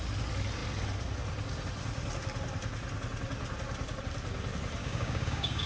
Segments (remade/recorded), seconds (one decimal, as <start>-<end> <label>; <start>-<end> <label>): 0.0-4.8 recorded; 4.8-5.7 remade